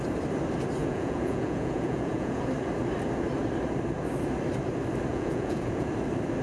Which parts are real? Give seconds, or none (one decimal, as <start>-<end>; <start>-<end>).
0.0-0.8; 2.4-5.1; 5.9-6.4